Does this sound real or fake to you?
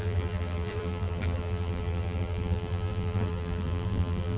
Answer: fake